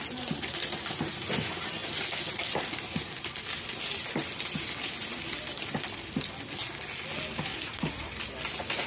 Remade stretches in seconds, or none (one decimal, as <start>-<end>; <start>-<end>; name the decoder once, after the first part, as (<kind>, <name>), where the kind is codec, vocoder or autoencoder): 7.5-8.1 (vocoder, Vocos)